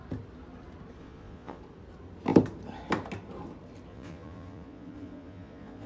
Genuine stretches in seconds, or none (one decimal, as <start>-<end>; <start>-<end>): 0.0-1.0; 1.6-3.9